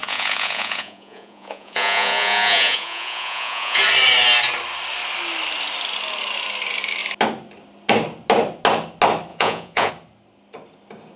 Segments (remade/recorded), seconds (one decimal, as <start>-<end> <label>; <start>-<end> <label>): 0.0-3.8 remade; 3.8-9.3 recorded; 9.3-9.9 remade; 9.9-11.2 recorded